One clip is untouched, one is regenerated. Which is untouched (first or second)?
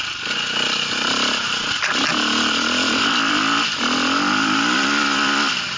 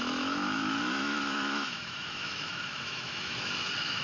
first